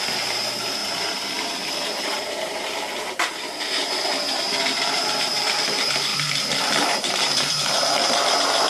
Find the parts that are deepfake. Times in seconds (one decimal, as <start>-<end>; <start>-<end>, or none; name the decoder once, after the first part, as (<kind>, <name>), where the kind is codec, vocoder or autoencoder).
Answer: 0.0-8.7 (vocoder, BigVGAN v2)